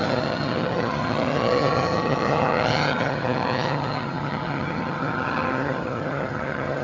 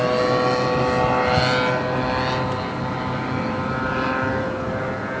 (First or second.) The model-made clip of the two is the first